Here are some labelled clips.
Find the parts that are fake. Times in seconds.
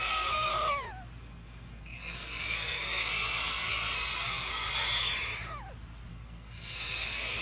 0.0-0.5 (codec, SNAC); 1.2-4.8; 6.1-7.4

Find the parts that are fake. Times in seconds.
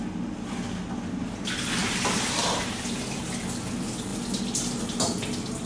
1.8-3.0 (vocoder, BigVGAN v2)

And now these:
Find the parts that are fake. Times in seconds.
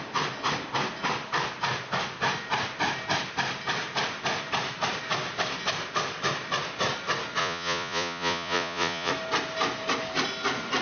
7.4-9.1 (vocoder, Vocos)